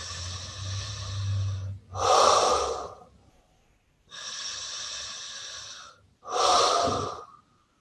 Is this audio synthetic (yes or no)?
no